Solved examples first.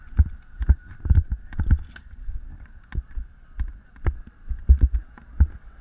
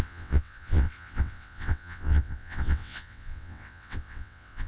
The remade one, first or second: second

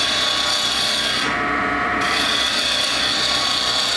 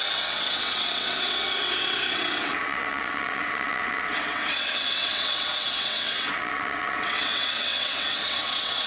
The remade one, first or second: second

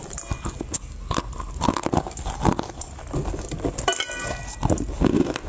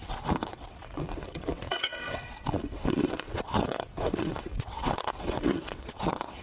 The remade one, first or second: second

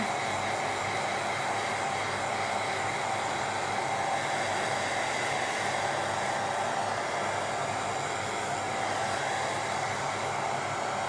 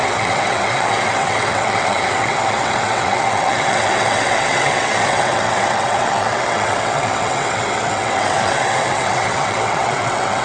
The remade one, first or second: second